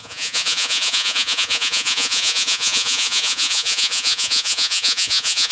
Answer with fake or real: fake